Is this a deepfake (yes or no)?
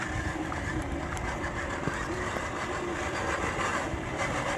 yes